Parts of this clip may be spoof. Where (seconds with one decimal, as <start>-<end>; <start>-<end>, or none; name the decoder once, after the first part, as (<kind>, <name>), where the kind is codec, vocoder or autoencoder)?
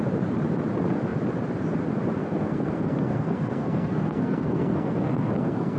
2.2-5.8 (codec, SNAC)